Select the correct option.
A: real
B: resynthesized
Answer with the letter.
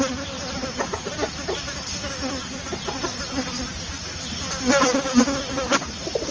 A